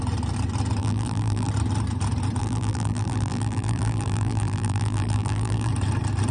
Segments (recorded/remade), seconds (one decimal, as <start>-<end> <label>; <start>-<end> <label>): 0.0-0.8 recorded; 0.8-1.5 remade; 1.5-2.4 recorded; 2.4-5.7 remade; 5.7-6.3 recorded